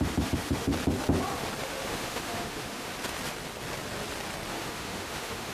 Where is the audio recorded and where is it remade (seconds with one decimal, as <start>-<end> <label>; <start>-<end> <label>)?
0.0-0.7 remade; 0.7-1.6 recorded; 1.6-2.9 remade; 2.9-4.5 recorded; 4.5-5.5 remade